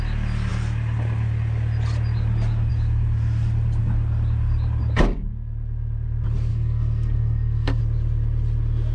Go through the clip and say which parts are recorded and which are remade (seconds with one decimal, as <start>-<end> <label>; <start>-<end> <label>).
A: 0.0-6.5 recorded; 6.5-7.8 remade; 7.8-8.9 recorded